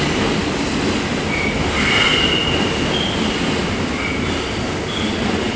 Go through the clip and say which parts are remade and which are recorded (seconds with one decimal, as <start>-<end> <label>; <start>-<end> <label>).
0.0-5.6 recorded